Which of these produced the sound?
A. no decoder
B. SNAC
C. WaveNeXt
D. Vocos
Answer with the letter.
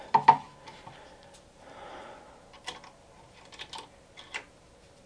A